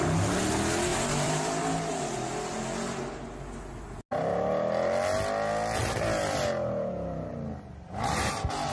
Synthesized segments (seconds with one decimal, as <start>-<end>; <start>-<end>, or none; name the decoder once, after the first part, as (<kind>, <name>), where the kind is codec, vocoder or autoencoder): 0.9-1.6 (vocoder, BigVGAN v2)